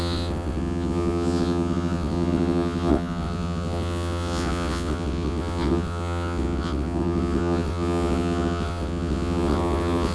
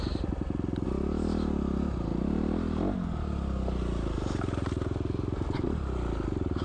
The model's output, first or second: first